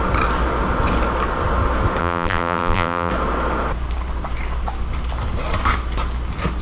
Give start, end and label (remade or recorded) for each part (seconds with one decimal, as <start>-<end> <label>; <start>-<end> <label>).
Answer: 0.0-2.0 recorded; 2.0-3.1 remade; 3.1-6.6 recorded